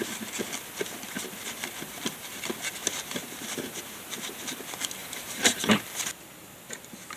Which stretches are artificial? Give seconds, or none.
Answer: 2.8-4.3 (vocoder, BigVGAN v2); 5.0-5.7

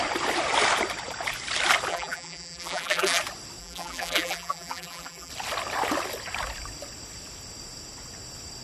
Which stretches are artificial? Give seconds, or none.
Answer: 1.9-3.2 (vocoder, BigVGAN v2); 3.6-5.3

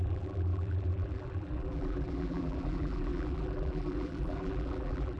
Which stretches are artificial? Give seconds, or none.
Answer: 0.0-5.2 (vocoder, BigVGAN v2)

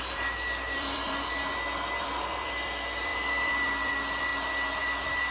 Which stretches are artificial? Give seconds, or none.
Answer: 0.0-1.4 (vocoder, BigVGAN v2); 2.0-4.3; 4.8-5.3